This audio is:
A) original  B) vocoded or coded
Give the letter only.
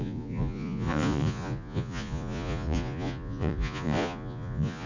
B